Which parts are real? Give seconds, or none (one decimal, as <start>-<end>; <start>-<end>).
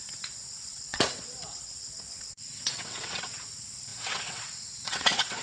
none